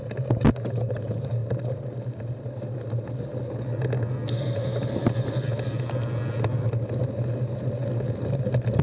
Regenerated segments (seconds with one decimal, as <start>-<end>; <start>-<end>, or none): none